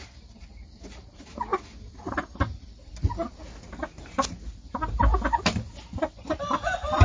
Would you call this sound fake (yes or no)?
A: no